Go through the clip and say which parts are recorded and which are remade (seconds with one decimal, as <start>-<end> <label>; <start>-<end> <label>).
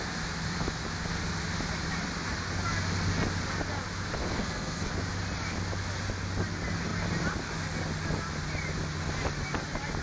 0.0-4.2 recorded; 4.2-4.9 remade; 4.9-10.0 recorded